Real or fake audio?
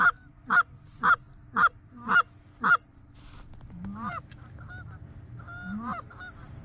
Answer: real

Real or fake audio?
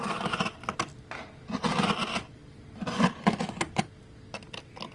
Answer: real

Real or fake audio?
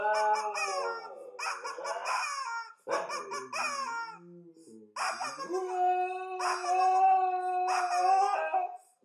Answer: real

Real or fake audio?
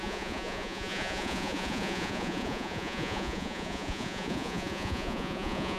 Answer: fake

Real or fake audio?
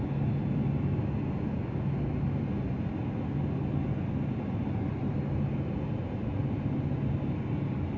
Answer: real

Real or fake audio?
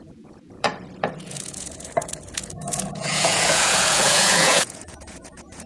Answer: fake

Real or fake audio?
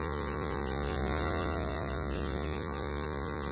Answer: fake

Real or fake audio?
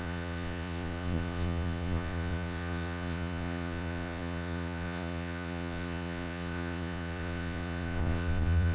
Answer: fake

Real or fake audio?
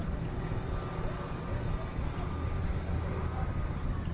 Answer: real